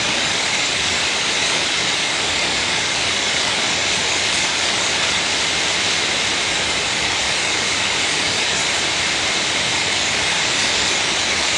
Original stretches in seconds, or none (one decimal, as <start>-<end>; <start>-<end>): 5.3-6.5; 8.6-9.8